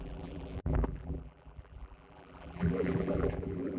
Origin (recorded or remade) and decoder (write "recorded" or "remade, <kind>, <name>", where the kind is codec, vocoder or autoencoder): remade, vocoder, BigVGAN v2